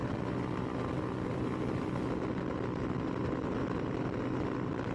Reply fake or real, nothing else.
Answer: real